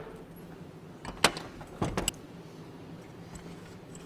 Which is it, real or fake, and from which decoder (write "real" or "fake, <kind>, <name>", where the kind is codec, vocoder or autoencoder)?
real